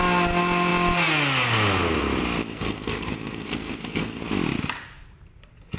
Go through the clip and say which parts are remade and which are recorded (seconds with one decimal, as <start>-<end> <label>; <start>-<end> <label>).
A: 0.0-2.5 recorded; 2.5-4.2 remade; 4.2-5.8 recorded